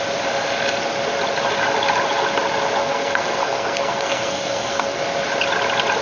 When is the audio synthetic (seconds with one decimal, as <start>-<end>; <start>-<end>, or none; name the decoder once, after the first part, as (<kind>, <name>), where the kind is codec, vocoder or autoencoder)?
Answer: 2.8-5.0 (codec, SNAC)